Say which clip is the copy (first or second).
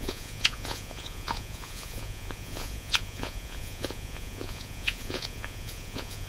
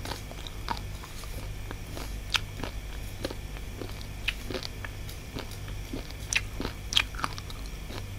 first